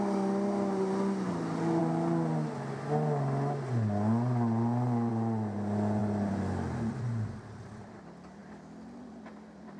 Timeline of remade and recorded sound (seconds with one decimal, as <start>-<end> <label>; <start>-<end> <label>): 0.0-6.0 recorded; 6.0-7.6 remade; 7.6-9.8 recorded